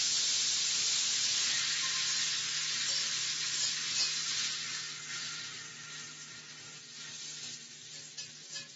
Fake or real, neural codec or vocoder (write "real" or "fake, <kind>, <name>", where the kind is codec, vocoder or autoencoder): real